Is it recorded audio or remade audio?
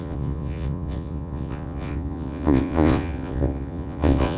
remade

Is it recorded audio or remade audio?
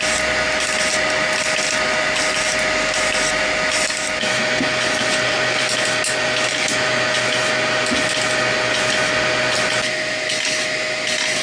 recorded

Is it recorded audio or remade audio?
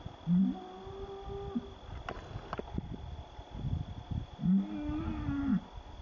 recorded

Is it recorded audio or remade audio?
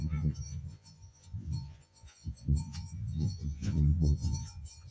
remade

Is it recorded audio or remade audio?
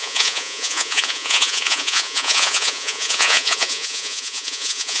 remade